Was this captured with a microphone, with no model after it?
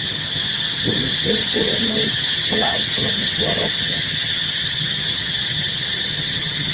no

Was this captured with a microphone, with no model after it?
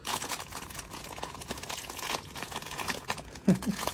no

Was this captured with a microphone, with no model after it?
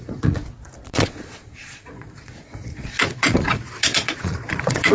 no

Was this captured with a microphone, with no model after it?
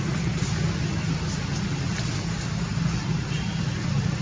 yes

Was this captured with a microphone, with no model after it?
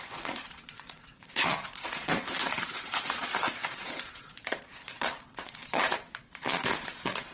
no